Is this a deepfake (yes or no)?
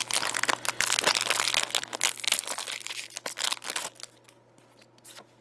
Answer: no